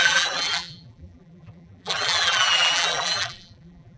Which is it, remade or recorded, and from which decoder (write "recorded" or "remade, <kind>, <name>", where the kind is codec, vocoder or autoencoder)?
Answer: remade, vocoder, BigVGAN v2